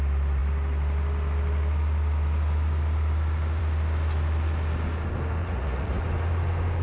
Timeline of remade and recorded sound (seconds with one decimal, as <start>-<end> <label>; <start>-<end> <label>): 0.0-5.4 recorded; 5.4-6.0 remade; 6.0-6.8 recorded